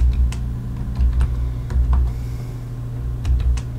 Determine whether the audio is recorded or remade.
recorded